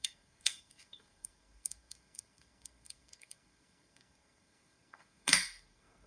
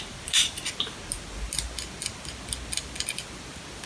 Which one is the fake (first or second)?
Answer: first